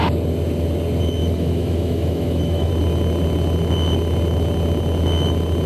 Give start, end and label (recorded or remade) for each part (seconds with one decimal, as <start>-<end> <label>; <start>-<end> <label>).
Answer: 0.0-1.2 recorded; 1.2-2.7 remade; 2.7-5.7 recorded